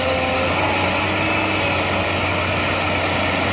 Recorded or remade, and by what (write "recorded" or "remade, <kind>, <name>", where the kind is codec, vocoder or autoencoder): recorded